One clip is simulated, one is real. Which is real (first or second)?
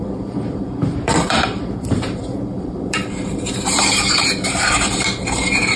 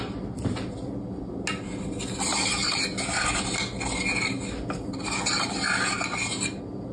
second